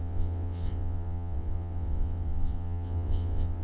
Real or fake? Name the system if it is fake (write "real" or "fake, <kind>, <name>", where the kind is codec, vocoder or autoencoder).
fake, vocoder, WaveNeXt